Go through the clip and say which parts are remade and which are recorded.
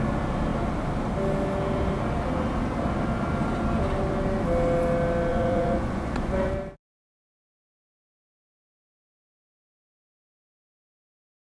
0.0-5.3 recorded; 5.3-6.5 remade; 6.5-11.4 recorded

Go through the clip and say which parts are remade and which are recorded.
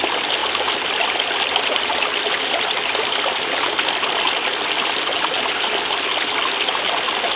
0.0-7.4 recorded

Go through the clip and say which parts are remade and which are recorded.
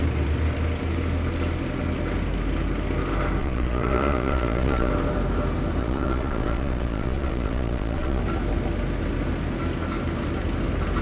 0.0-3.4 recorded; 3.4-4.9 remade; 4.9-5.8 recorded; 5.8-8.2 remade; 8.2-11.0 recorded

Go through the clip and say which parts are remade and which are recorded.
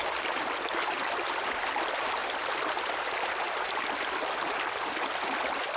0.0-5.8 recorded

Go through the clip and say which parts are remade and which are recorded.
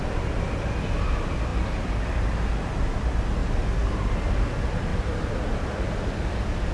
0.0-6.7 recorded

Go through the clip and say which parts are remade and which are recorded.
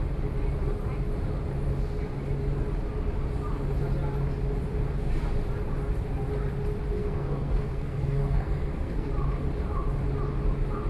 0.0-7.0 recorded; 7.0-9.1 remade; 9.1-10.9 recorded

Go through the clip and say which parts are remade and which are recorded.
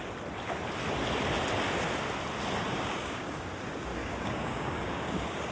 0.0-2.7 recorded; 2.7-3.4 remade; 3.4-3.9 recorded; 3.9-5.5 remade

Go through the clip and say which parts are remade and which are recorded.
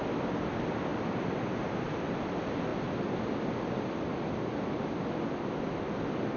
0.0-6.4 recorded